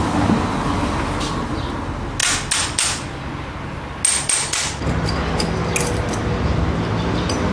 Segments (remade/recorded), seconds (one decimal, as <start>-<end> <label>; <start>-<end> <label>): 0.0-7.5 recorded